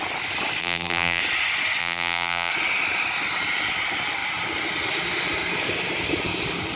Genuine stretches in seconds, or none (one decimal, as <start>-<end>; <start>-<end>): 0.0-0.6; 1.2-1.8; 2.5-6.8